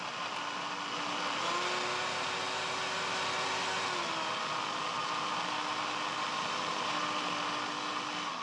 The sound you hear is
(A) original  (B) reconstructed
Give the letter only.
A